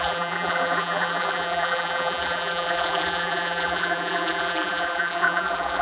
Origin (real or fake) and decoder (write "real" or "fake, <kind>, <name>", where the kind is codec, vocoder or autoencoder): fake, vocoder, BigVGAN v2